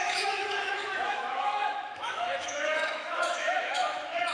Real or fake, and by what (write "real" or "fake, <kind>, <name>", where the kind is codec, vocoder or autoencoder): fake, autoencoder, DAC-VAE